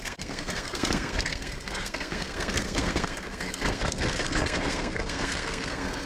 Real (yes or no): no